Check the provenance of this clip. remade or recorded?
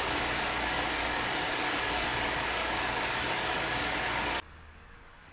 remade